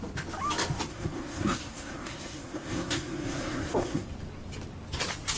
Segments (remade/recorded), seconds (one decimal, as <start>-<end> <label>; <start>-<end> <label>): 0.0-0.9 recorded; 0.9-4.1 remade; 4.1-5.4 recorded